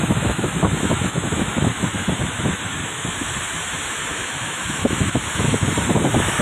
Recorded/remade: remade